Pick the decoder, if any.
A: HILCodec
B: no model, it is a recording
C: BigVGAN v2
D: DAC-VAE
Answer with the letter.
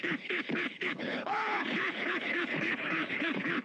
A